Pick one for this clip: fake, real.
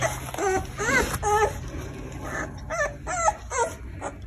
real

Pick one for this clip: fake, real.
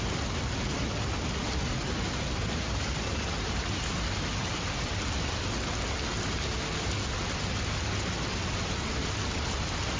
real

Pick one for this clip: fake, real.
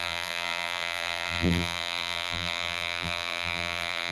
fake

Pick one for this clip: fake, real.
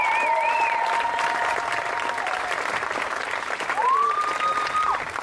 real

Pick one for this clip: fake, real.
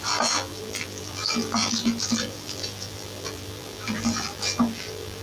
fake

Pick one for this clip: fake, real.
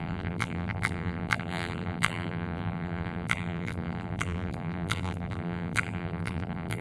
fake